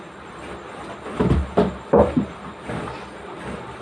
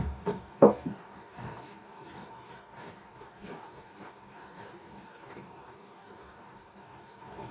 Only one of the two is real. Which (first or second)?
first